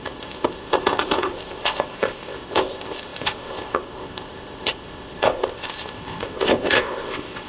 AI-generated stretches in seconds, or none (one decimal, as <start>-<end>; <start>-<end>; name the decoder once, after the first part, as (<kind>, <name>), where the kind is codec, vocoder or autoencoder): 0.0-7.5 (codec, ZipCodec)

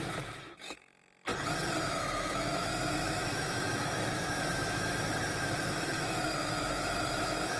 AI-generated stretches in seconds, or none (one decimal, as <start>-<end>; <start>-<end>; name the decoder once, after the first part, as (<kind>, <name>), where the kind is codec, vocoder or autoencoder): 0.0-1.3 (autoencoder, DAC-VAE); 1.8-7.6